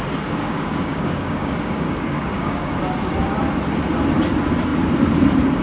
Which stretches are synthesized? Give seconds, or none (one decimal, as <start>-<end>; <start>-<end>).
0.4-2.8